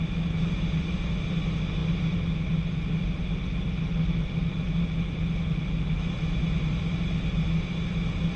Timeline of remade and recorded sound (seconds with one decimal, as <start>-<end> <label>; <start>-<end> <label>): 0.0-8.4 recorded